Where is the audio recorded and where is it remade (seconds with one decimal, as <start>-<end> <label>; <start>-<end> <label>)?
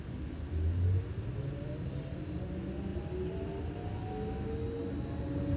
0.0-5.6 recorded